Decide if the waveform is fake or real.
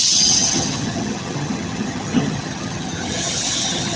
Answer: fake